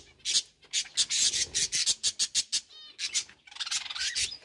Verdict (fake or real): real